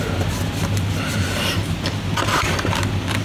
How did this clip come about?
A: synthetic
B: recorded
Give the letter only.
B